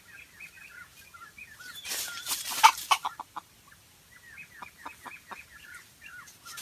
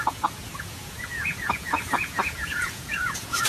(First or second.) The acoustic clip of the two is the first